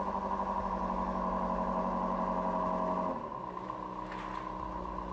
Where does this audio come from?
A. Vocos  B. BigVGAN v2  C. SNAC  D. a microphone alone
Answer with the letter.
D